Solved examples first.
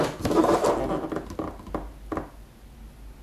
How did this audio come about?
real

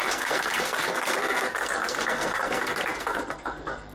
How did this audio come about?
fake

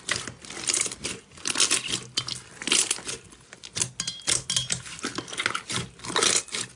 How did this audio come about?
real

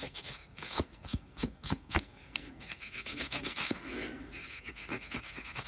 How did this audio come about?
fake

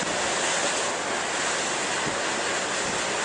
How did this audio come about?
real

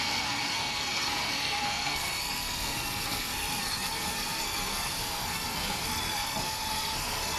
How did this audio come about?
fake